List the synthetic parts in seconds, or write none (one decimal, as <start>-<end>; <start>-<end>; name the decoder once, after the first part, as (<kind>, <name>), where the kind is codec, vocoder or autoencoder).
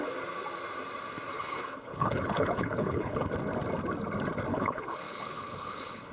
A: 1.3-3.3 (codec, HILCodec); 4.5-6.1